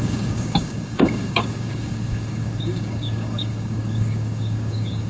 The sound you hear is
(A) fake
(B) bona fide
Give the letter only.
A